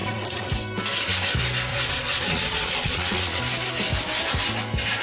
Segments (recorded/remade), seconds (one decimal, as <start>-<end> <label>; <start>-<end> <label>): 0.0-0.5 remade; 0.5-1.7 recorded; 1.7-3.4 remade; 3.4-5.0 recorded